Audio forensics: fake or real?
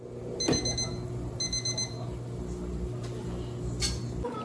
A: real